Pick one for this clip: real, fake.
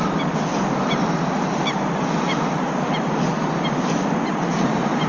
real